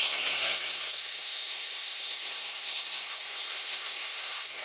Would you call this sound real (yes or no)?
no